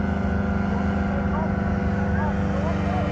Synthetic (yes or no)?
no